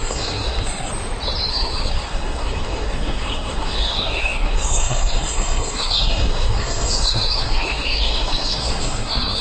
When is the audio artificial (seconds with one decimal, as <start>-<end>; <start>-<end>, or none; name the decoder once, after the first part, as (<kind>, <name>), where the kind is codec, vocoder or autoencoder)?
0.0-0.9 (codec, SNAC); 1.5-9.4